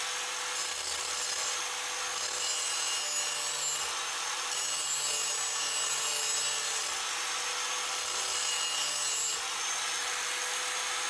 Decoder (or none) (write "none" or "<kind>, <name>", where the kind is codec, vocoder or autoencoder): none